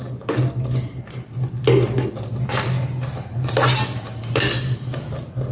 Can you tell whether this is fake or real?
real